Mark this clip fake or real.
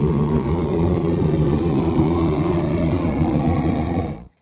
fake